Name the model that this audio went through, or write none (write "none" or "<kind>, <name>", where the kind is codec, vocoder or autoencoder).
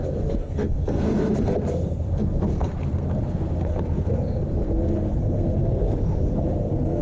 codec, SNAC